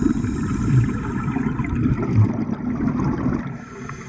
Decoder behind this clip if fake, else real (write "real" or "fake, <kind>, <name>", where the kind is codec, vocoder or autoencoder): real